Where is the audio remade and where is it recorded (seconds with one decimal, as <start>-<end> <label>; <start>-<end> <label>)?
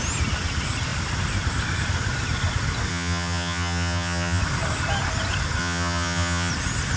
0.0-2.9 recorded; 2.9-4.4 remade; 4.4-5.6 recorded; 5.6-6.5 remade; 6.5-7.0 recorded